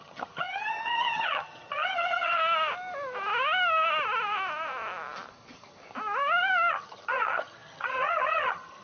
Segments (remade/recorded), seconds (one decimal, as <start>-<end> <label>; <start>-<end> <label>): 0.0-2.4 remade; 2.4-6.7 recorded; 6.7-8.8 remade